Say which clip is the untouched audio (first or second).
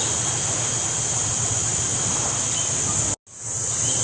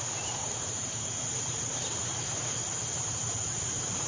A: first